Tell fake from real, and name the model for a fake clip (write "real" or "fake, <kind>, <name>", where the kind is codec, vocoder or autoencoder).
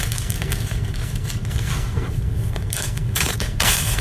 fake, codec, SNAC